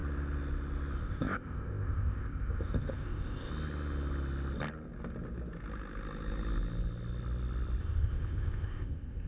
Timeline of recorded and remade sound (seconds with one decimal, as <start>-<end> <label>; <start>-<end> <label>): 0.0-1.0 recorded; 1.0-3.5 remade; 3.5-7.8 recorded; 7.8-9.3 remade